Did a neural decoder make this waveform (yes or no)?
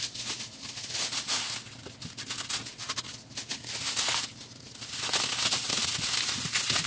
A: no